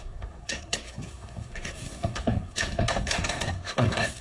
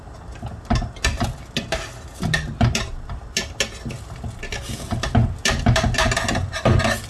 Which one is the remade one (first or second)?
first